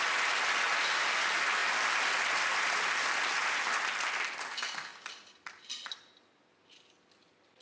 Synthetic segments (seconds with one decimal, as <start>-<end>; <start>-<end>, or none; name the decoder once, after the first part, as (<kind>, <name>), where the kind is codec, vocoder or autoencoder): none